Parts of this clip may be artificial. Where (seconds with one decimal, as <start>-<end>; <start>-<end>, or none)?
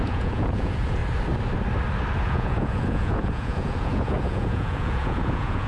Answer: 0.0-1.0; 2.2-5.7